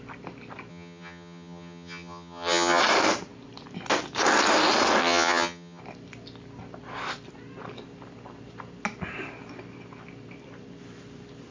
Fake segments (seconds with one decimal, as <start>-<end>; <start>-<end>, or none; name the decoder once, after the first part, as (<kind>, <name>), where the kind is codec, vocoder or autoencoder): 0.7-2.8 (vocoder, HiFi-GAN); 5.0-5.8